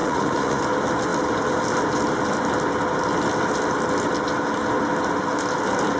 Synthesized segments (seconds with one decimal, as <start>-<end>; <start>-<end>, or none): 0.0-0.6